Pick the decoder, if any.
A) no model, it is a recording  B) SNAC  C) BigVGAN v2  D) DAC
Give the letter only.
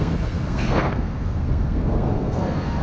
B